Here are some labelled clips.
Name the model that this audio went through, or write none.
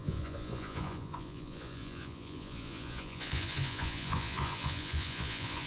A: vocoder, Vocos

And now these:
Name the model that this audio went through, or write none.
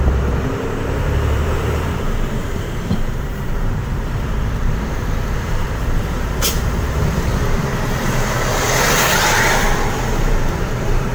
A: vocoder, BigVGAN v2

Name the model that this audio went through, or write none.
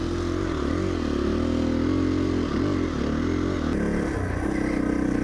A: none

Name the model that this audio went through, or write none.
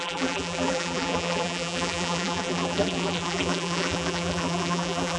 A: vocoder, BigVGAN v2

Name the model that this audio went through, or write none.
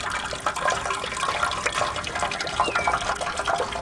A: none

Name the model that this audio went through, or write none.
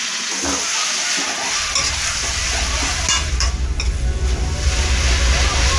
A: none